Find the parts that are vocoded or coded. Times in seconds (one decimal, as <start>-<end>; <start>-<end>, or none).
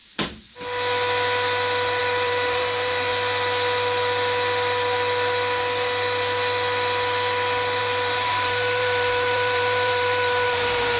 2.0-3.1; 7.8-11.0